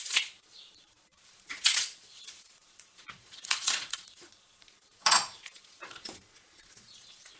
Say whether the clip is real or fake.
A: fake